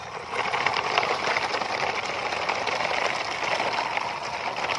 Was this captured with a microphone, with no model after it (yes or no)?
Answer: yes